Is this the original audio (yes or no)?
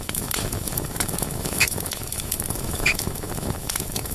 no